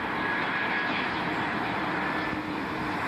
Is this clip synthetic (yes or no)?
no